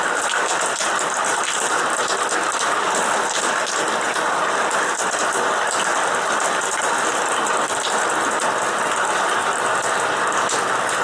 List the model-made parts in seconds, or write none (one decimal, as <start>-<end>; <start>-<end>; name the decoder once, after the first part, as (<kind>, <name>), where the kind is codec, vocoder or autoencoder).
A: none